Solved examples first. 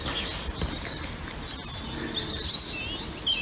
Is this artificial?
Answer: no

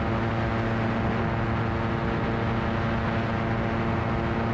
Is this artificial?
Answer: no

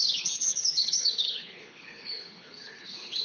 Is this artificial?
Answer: yes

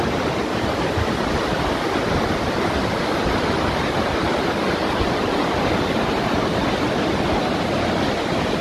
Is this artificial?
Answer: no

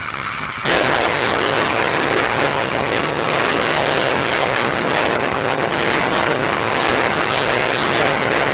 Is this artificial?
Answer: yes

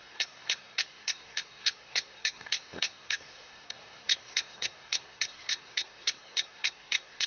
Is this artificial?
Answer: yes